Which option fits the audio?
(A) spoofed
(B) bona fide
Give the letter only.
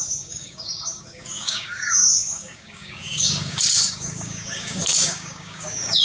A